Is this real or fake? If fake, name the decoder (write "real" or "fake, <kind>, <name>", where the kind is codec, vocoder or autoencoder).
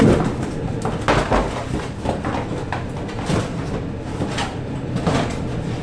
real